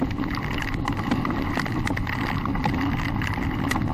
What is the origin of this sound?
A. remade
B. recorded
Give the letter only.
B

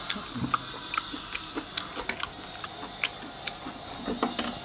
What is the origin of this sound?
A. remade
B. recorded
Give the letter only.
B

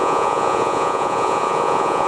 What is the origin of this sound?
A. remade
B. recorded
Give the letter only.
A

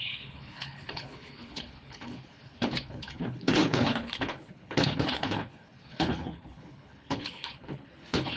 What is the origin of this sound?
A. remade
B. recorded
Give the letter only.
A